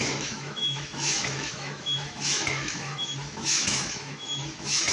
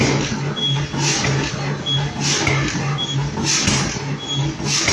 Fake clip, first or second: first